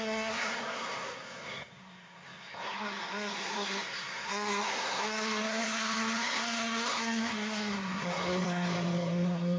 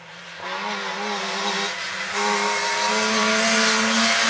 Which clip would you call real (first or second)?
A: second